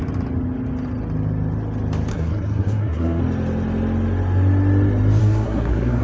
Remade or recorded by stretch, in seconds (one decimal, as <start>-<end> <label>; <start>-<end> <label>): 0.0-2.1 recorded; 2.1-3.2 remade; 3.2-5.2 recorded; 5.2-6.0 remade